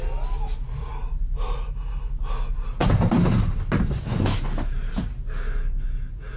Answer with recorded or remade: recorded